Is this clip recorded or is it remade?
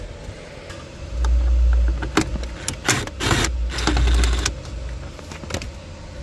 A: recorded